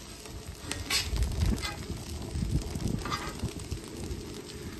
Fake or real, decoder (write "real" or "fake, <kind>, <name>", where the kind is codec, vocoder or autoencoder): real